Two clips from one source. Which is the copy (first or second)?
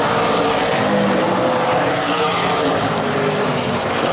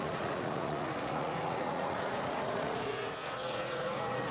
second